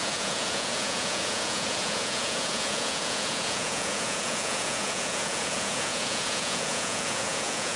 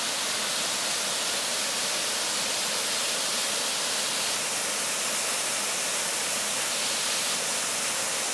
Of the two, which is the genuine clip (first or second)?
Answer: second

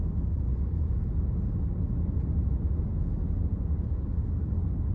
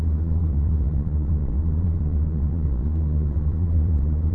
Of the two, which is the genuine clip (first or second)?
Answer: first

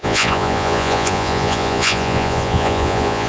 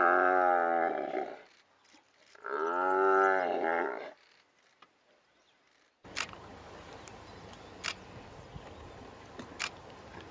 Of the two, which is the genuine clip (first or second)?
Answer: second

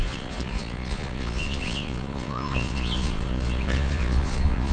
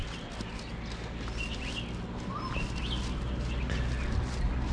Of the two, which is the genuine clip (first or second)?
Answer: second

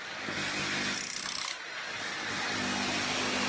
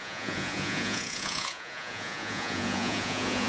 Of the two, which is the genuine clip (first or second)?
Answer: first